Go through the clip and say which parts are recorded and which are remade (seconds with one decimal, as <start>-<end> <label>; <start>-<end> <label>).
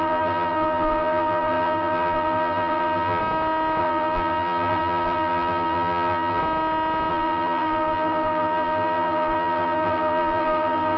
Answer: 0.0-3.2 remade; 3.2-3.8 recorded; 3.8-6.4 remade; 6.4-7.1 recorded; 7.1-11.0 remade